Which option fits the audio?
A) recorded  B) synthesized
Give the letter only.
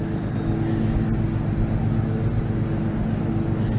A